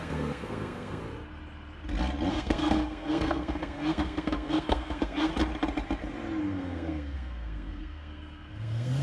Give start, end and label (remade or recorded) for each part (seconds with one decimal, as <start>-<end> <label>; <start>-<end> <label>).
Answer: 0.0-1.0 remade; 1.0-2.3 recorded; 2.3-5.3 remade; 5.3-6.4 recorded; 6.4-9.0 remade